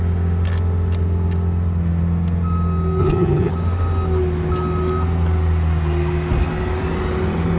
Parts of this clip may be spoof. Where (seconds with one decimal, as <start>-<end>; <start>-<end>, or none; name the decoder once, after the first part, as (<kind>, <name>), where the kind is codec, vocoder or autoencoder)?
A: 3.0-3.5 (vocoder, HiFi-GAN)